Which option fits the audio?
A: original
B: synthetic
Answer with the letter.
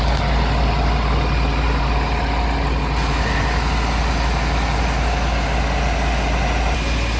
A